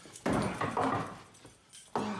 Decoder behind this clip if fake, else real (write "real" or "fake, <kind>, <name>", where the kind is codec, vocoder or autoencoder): real